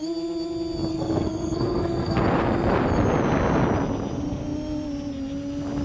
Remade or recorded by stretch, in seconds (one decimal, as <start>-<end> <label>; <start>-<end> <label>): 0.0-0.9 recorded; 0.9-2.2 remade; 2.2-5.8 recorded